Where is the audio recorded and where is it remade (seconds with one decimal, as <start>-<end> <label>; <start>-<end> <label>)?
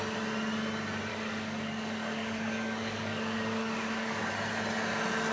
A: 0.0-1.1 recorded; 1.1-4.3 remade; 4.3-5.3 recorded